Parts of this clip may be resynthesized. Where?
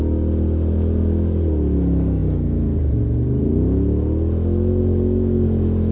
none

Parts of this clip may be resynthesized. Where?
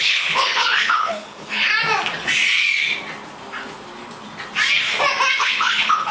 0.0-1.7 (codec, HILCodec); 5.4-6.1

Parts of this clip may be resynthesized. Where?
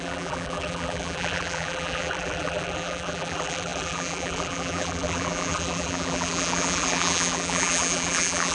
0.0-8.5 (vocoder, BigVGAN v2)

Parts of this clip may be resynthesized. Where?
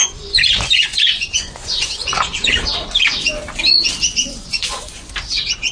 0.0-2.6 (vocoder, Vocos); 4.1-5.0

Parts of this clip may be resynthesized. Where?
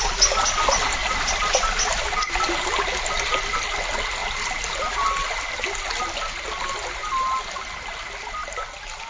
none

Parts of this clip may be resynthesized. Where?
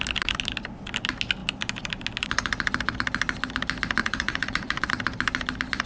4.0-4.9 (vocoder, Vocos)